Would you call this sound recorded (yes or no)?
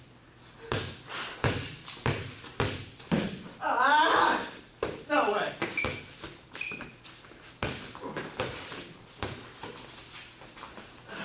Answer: yes